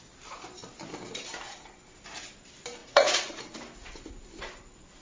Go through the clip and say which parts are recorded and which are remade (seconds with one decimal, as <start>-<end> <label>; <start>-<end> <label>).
0.0-2.8 recorded; 2.8-3.4 remade; 3.4-5.0 recorded